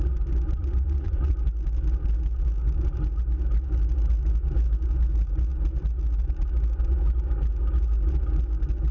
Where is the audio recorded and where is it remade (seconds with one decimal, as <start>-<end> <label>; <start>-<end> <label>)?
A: 0.0-0.6 recorded; 0.6-1.3 remade; 1.3-8.9 recorded